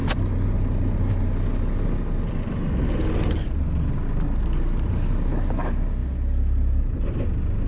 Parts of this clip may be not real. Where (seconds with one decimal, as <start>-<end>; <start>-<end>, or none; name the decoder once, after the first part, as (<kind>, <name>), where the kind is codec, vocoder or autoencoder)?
none